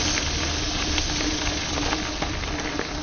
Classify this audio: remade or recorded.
recorded